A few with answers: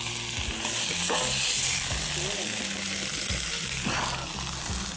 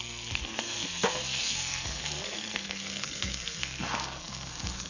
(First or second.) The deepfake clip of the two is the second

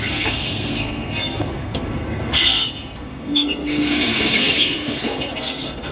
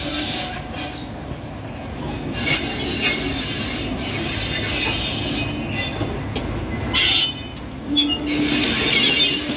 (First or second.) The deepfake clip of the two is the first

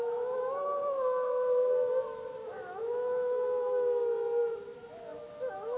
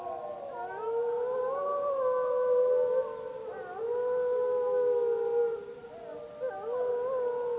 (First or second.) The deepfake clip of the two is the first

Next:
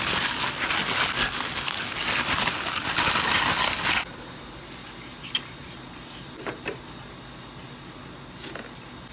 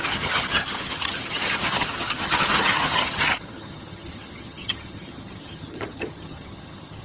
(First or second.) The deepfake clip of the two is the second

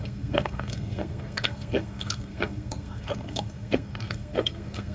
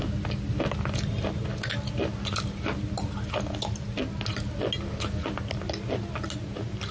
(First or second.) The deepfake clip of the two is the first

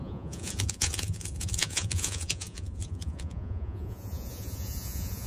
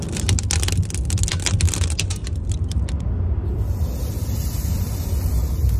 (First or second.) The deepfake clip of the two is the first